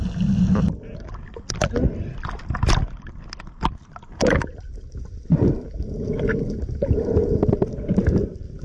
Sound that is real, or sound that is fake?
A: real